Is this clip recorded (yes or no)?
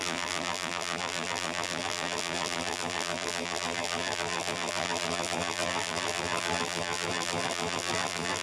no